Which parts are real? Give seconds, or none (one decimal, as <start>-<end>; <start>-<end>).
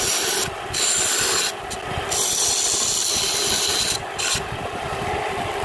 0.0-5.6